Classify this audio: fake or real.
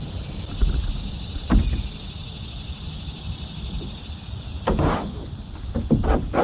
real